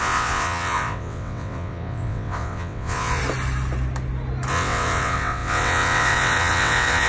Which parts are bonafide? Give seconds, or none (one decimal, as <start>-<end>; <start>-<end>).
3.2-4.5